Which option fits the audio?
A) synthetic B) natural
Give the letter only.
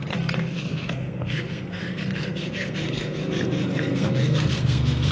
A